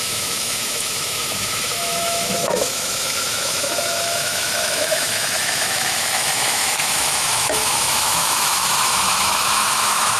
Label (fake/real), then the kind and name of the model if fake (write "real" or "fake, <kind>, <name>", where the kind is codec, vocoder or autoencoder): fake, autoencoder, DAC-VAE